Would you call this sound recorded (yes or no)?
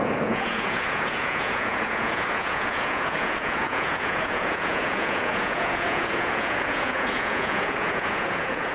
no